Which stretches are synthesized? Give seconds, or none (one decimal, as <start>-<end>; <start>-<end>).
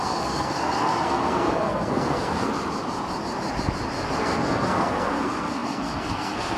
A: 0.0-2.5; 4.2-6.6